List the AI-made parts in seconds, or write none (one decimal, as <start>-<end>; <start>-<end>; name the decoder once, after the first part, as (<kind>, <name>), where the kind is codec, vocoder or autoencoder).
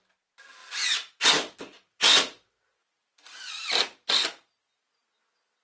none